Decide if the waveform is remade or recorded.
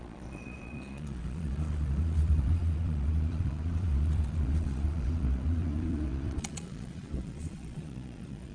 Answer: remade